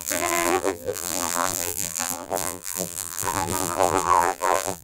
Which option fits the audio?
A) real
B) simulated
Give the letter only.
B